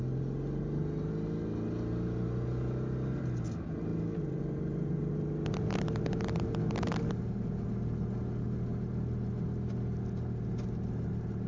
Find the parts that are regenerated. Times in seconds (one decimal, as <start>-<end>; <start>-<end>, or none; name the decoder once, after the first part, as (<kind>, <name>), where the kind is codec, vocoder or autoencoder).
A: none